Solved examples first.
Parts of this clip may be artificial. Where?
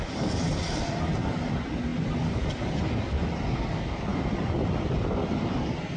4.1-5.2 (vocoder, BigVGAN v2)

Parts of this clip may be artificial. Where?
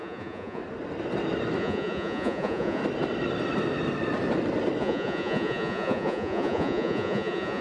0.0-0.6 (vocoder, Vocos); 1.6-2.8; 4.8-7.6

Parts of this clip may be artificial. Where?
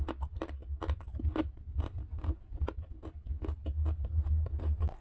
none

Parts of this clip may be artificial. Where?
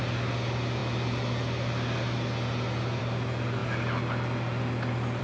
none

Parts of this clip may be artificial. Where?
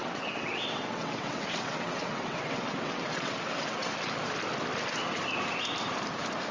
0.0-3.9 (vocoder, WaveNeXt)